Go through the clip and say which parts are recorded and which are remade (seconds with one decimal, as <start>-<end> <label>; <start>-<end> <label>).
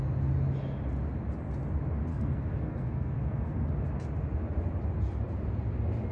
0.0-2.1 recorded; 2.1-3.5 remade; 3.5-6.1 recorded